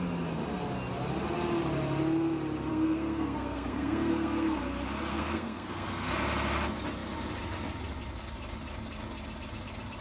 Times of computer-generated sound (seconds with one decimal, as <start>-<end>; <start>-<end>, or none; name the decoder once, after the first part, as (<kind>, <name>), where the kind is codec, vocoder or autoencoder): 2.7-4.6 (codec, SNAC); 5.1-6.1